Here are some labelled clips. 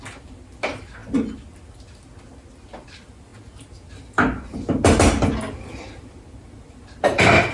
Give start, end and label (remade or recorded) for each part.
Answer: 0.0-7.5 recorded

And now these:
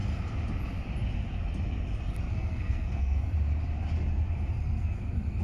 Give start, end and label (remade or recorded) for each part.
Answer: 0.0-2.2 recorded; 2.2-3.2 remade; 3.2-4.6 recorded; 4.6-5.4 remade

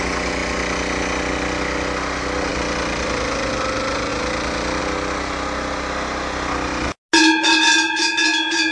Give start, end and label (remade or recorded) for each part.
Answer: 0.0-8.7 recorded

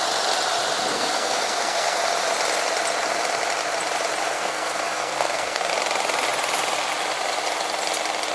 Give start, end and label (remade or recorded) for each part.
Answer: 0.0-0.9 recorded; 0.9-2.0 remade; 2.0-4.3 recorded; 4.3-5.7 remade; 5.7-8.3 recorded